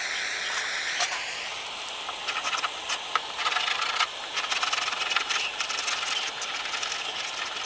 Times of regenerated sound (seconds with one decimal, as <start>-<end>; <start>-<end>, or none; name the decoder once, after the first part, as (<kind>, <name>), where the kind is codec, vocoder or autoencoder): none